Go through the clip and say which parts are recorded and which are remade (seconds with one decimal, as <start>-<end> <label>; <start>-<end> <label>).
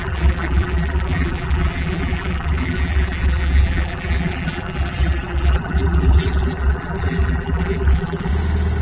0.0-8.3 remade; 8.3-8.8 recorded